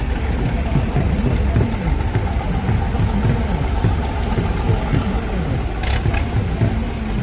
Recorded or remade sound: recorded